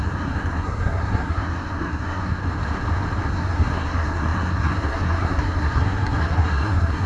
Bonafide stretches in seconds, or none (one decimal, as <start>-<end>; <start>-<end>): 2.4-3.3